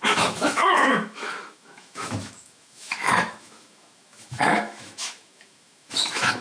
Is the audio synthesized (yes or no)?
yes